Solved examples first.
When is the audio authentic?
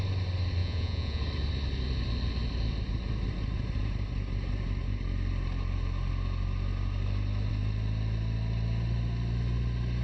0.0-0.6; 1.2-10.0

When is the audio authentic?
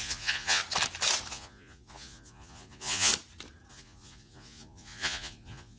0.6-1.3; 3.1-3.7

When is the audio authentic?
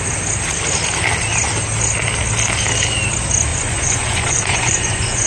0.0-3.5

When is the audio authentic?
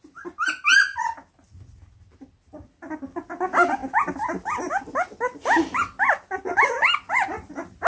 0.0-7.9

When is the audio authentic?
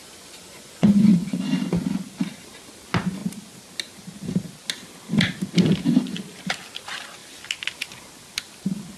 1.4-9.0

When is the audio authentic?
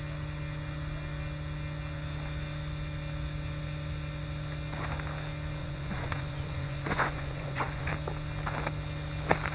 0.0-5.6; 7.9-9.5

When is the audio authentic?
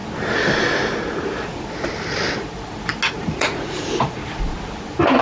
0.0-3.1; 4.2-5.2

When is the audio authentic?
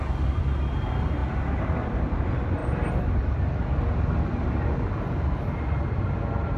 0.0-6.6